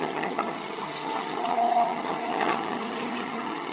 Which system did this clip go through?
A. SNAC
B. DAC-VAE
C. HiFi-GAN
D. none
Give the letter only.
C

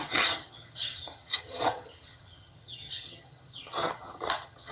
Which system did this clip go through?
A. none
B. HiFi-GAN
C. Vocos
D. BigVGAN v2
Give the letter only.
B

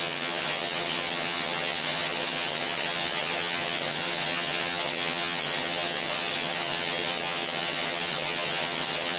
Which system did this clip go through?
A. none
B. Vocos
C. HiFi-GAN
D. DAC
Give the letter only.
C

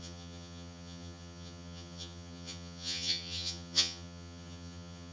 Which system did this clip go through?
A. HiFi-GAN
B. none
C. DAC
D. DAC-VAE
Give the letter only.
A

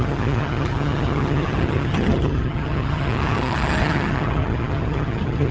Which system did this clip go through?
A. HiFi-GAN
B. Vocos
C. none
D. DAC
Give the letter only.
A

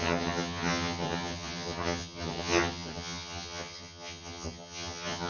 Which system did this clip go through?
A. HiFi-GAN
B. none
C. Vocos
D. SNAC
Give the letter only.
A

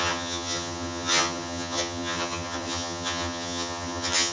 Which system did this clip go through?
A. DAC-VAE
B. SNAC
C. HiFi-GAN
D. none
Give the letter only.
C